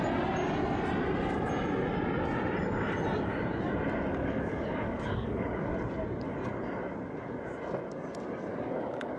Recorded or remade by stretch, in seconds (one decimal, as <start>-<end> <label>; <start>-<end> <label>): 0.0-4.1 recorded; 4.1-5.7 remade; 5.7-8.5 recorded; 8.5-9.2 remade